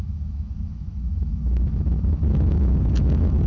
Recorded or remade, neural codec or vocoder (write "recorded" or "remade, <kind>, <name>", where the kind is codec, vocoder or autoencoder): remade, autoencoder, DAC-VAE